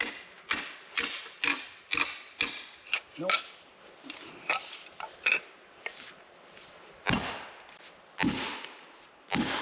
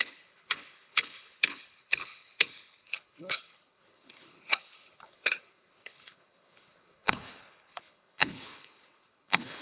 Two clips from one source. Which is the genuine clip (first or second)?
first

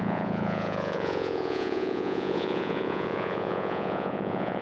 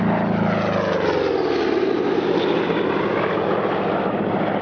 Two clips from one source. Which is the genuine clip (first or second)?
second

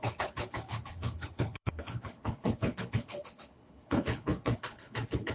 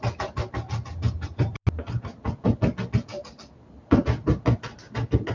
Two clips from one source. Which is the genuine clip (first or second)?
second